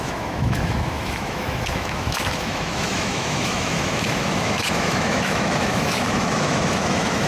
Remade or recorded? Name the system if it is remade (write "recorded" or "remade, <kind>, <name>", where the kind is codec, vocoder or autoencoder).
remade, autoencoder, DAC-VAE